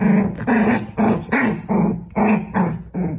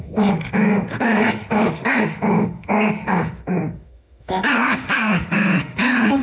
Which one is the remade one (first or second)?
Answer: second